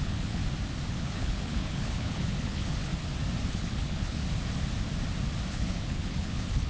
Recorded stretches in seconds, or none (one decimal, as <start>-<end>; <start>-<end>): 0.4-0.9; 2.9-3.5; 4.2-5.5

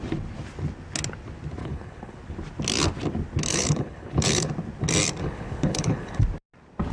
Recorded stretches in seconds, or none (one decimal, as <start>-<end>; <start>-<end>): 0.0-1.6; 2.2-3.5; 4.5-5.2; 6.2-6.9

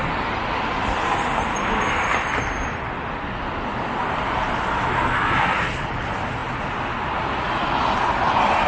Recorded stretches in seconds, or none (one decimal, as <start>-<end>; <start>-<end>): 0.0-8.7